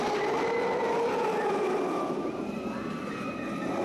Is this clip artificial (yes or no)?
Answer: no